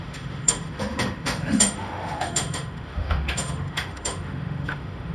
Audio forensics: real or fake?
fake